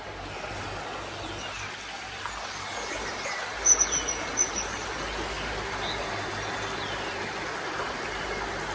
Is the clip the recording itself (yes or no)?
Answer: yes